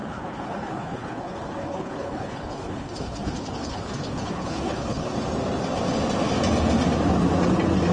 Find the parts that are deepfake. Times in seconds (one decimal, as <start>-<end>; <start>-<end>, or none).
0.0-5.1